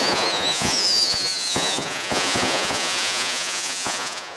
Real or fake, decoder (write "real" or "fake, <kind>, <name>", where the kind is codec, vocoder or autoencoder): fake, vocoder, Vocos